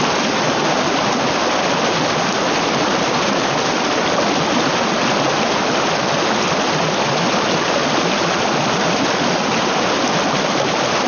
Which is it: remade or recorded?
recorded